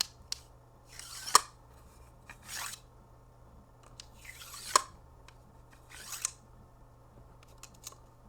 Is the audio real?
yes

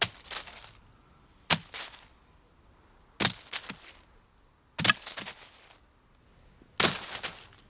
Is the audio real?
yes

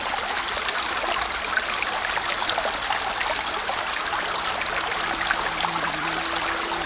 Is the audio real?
yes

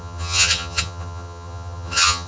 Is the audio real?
no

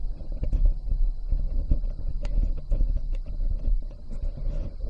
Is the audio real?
yes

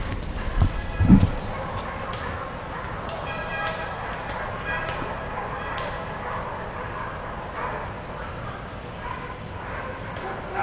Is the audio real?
yes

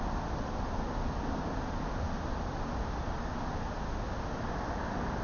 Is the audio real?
yes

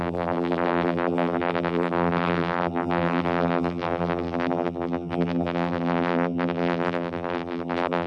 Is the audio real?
no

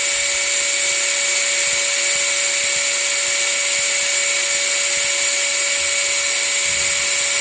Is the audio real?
yes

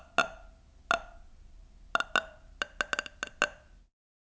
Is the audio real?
yes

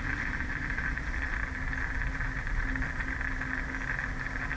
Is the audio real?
yes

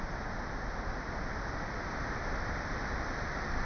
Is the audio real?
yes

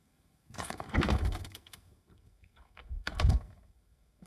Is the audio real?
no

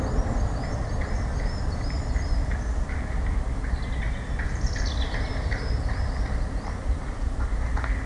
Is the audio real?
no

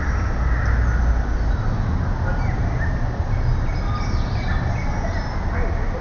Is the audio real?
yes